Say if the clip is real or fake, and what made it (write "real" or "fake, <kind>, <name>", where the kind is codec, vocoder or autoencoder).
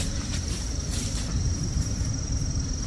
fake, vocoder, BigVGAN v2